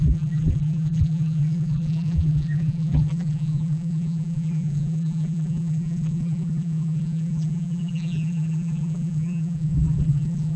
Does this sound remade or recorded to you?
remade